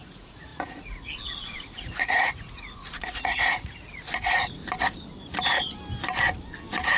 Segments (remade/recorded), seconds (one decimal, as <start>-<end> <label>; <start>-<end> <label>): 0.0-4.6 remade; 4.6-7.0 recorded